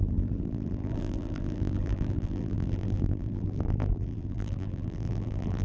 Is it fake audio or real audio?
fake